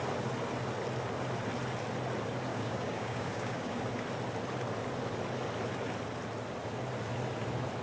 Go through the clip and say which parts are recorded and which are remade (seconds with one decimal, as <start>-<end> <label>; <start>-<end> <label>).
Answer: 0.0-2.5 recorded; 2.5-3.8 remade; 3.8-7.8 recorded